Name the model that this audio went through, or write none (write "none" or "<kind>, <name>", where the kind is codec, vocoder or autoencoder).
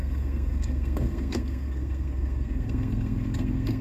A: codec, SNAC